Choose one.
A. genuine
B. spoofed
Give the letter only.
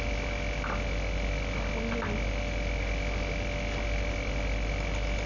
A